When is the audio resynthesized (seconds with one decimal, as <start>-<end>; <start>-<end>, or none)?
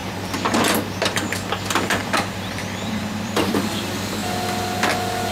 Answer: 0.0-0.8; 2.0-3.8